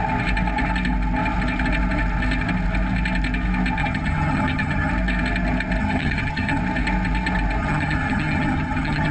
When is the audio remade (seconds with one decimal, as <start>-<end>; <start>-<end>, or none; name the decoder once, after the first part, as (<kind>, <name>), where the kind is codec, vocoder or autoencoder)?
3.8-4.9 (vocoder, HiFi-GAN); 5.8-6.6; 7.6-9.1